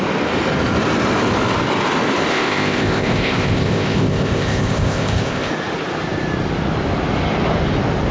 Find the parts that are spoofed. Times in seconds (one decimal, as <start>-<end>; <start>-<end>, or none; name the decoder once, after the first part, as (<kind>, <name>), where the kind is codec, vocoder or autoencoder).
2.3-5.5 (codec, ZipCodec)